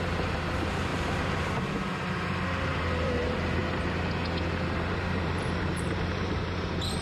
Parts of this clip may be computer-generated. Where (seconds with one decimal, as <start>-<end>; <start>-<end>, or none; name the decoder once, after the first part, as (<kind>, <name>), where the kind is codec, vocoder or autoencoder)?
0.0-3.6 (vocoder, BigVGAN v2); 4.7-7.0